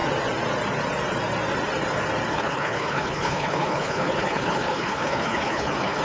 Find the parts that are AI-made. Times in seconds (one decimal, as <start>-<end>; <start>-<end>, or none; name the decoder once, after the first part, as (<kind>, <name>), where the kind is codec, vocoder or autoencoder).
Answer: 2.3-6.0 (codec, HILCodec)